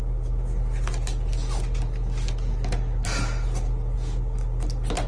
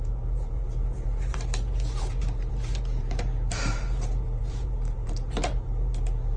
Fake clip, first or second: second